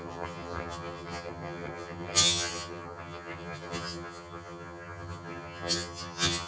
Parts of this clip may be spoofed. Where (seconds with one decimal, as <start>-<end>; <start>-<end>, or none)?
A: 0.0-6.5